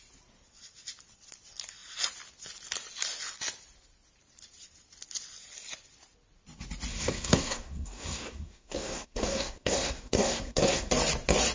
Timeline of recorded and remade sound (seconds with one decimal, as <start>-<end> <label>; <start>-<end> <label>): 0.0-6.9 recorded; 6.9-10.9 remade; 10.9-11.5 recorded